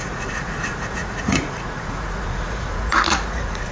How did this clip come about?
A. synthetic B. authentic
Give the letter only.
A